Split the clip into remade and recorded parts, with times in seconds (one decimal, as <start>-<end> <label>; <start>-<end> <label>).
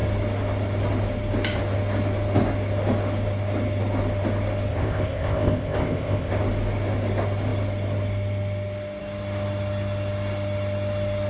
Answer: 0.0-4.7 recorded; 4.7-6.3 remade; 6.3-11.3 recorded